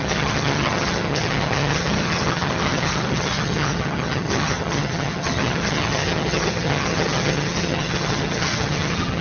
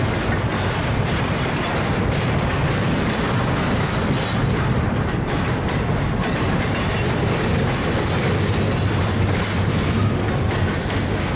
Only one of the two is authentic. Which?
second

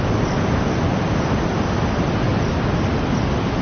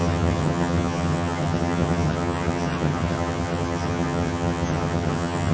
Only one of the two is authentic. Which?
first